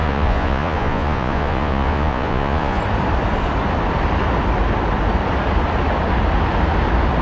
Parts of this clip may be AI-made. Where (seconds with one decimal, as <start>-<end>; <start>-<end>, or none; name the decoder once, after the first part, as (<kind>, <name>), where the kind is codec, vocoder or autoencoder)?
0.0-2.8 (vocoder, Vocos)